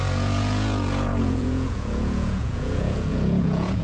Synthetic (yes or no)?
yes